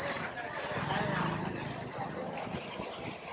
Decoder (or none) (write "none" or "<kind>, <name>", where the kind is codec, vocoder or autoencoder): none